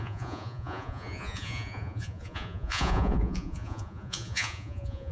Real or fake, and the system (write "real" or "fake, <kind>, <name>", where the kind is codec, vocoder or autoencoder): fake, vocoder, Vocos